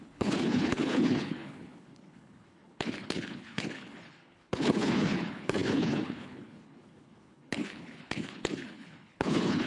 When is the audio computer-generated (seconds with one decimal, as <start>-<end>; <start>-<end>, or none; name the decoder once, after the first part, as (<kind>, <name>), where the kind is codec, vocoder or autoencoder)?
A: 0.0-9.7 (codec, HILCodec)